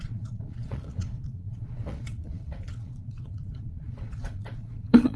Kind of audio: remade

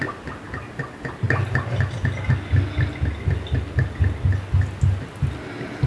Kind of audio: recorded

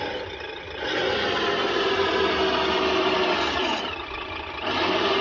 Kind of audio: recorded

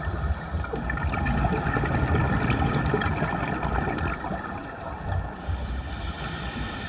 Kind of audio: recorded